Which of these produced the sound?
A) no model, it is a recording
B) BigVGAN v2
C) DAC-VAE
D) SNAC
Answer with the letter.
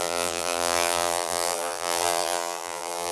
B